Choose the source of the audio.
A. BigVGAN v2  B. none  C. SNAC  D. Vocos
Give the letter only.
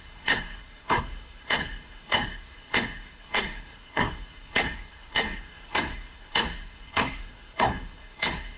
C